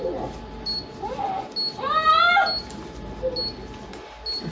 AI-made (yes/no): no